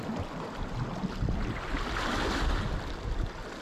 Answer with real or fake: real